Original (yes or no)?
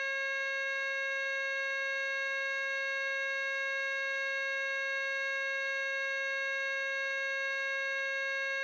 no